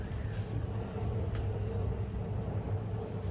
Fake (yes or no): no